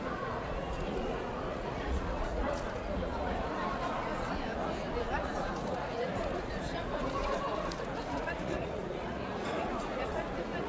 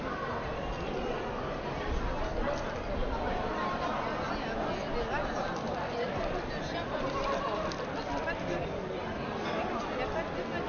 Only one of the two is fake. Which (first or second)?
first